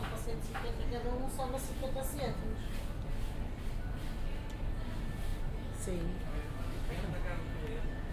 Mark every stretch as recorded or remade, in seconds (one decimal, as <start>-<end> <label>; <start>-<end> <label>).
0.0-8.1 recorded